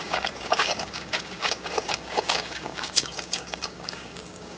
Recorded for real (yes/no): no